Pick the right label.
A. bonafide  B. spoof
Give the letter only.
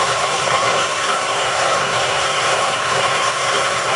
B